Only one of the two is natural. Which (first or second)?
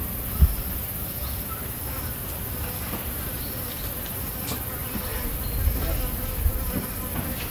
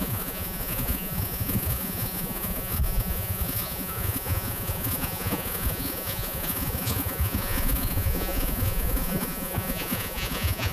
first